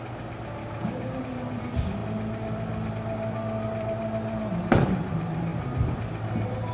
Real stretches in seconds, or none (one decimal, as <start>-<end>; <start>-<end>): 0.0-0.6; 1.2-6.7